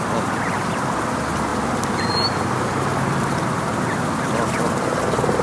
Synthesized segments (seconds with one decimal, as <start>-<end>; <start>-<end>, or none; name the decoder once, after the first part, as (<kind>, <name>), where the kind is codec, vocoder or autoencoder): none